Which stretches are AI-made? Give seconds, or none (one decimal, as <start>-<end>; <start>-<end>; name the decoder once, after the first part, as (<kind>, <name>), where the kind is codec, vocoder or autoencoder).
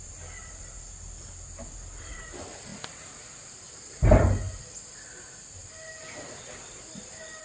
none